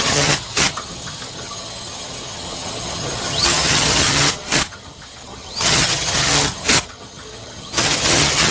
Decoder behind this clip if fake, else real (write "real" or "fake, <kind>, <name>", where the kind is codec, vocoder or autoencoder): fake, vocoder, HiFi-GAN